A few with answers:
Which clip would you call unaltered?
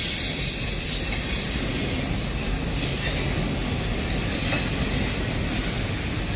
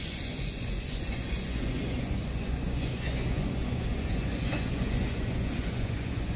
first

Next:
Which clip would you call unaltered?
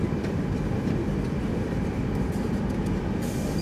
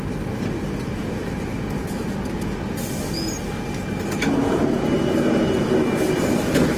second